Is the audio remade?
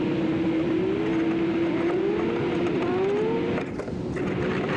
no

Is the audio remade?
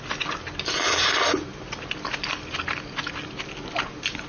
no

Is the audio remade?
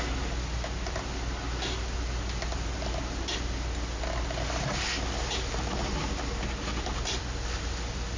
no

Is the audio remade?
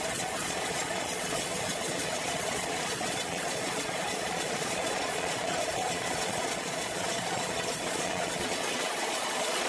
yes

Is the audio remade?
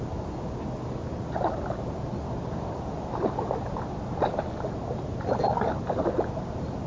no